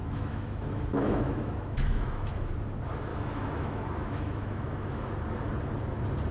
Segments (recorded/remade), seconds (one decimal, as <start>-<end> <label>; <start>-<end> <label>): 0.0-2.5 remade; 2.5-3.1 recorded; 3.1-5.1 remade; 5.1-6.3 recorded